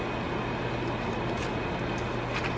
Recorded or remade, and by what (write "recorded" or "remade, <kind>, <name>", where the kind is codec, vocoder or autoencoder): recorded